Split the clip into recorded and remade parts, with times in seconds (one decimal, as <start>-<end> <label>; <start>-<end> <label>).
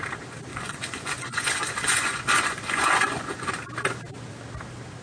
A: 0.0-0.5 recorded; 0.5-3.5 remade; 3.5-5.0 recorded